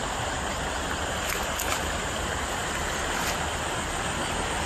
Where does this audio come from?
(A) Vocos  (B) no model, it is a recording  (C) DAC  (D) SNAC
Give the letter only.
B